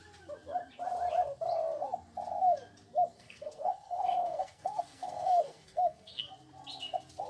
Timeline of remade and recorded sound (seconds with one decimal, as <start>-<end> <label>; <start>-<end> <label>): 0.0-3.1 recorded; 3.1-6.3 remade; 6.3-7.3 recorded